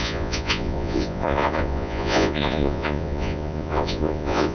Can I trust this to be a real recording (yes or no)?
no